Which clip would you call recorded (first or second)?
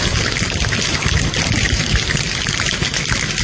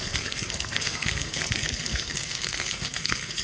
first